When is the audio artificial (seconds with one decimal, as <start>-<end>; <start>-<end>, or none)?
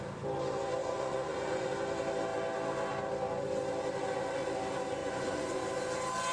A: 0.8-1.7; 5.0-5.6